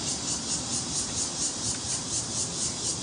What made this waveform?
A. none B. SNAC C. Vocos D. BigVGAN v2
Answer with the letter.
D